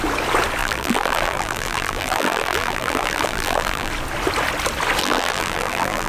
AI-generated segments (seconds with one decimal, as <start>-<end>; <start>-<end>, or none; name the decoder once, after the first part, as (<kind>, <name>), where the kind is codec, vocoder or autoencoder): 0.6-3.9 (vocoder, BigVGAN v2); 5.0-6.1